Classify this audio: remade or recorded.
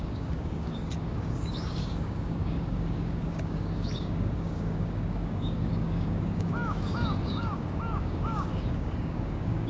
remade